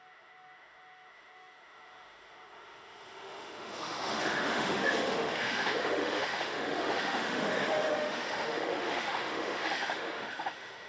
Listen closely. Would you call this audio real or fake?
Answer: fake